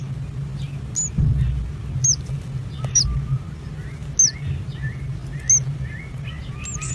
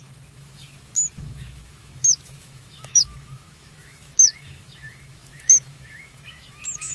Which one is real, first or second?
first